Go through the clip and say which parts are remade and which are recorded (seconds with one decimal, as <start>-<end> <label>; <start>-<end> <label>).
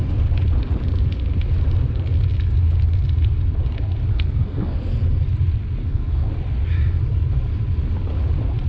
0.0-4.1 recorded; 4.1-4.8 remade; 4.8-5.8 recorded; 5.8-6.3 remade; 6.3-8.7 recorded